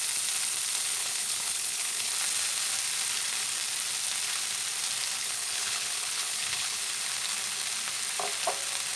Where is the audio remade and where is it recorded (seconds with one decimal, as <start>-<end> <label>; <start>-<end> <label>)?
0.0-1.0 recorded; 1.0-2.1 remade; 2.1-5.2 recorded; 5.2-6.9 remade; 6.9-9.0 recorded